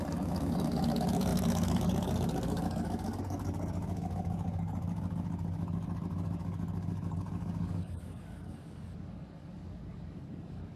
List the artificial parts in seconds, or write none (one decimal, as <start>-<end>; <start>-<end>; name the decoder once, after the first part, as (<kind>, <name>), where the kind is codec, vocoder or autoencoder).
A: 0.0-10.8 (codec, DAC)